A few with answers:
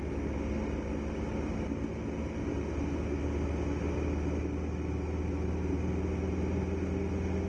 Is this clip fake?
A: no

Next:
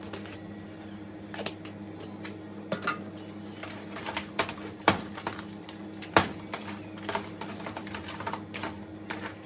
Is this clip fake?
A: no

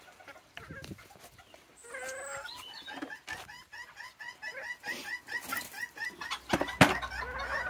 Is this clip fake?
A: no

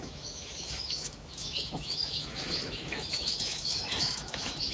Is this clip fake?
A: yes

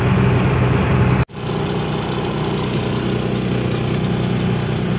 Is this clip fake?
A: no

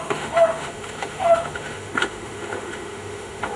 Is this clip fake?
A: yes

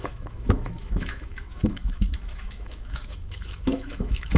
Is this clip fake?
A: yes